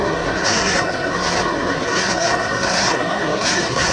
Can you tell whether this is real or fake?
fake